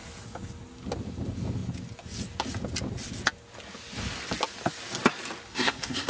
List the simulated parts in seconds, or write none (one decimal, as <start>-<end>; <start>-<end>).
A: 5.5-6.1

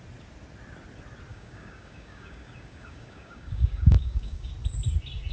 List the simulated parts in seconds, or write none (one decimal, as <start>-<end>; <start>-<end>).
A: 1.3-4.5